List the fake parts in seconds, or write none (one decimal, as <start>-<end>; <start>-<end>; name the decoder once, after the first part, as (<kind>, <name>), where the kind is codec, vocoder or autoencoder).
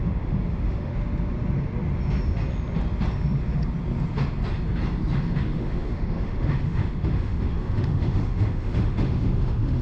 0.0-0.9 (autoencoder, DAC-VAE); 5.2-9.8